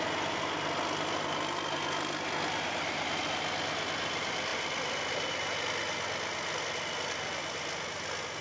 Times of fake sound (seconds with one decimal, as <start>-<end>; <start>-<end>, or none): none